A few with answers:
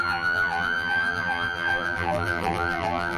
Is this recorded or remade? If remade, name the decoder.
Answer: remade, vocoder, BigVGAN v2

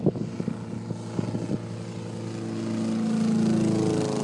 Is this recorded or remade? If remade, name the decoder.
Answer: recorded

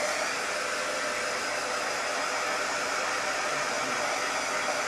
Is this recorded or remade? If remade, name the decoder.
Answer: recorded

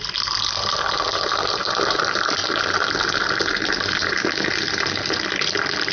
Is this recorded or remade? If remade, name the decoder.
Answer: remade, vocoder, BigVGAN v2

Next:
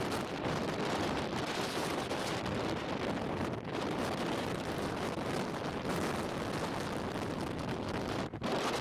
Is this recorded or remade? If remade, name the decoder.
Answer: remade, vocoder, BigVGAN v2